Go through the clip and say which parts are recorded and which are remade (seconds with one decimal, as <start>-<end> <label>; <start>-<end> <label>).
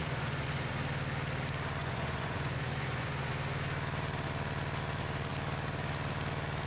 0.0-0.7 remade; 0.7-1.8 recorded; 1.8-3.3 remade; 3.3-6.7 recorded